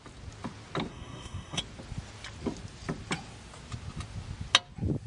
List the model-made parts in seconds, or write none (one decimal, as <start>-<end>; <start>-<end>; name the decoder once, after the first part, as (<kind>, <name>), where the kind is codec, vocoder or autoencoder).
0.9-1.6 (codec, SNAC)